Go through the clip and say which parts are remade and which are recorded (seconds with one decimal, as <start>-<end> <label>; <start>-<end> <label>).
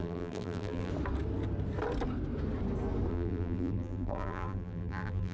0.0-0.9 remade; 0.9-3.1 recorded; 3.1-5.3 remade